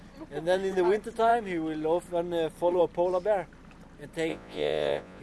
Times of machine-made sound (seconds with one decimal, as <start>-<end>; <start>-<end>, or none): 4.3-5.2